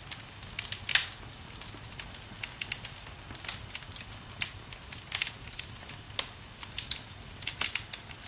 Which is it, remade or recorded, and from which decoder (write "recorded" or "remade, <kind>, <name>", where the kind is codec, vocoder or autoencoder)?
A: recorded